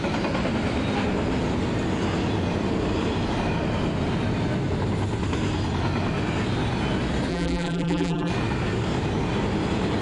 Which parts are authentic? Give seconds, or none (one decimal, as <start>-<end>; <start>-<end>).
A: 0.0-7.3; 8.3-10.0